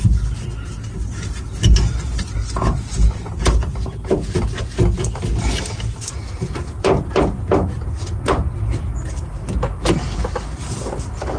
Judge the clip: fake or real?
real